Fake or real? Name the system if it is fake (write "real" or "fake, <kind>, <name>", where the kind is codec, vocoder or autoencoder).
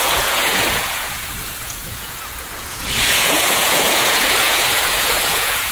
fake, vocoder, Vocos